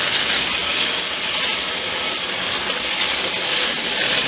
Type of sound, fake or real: real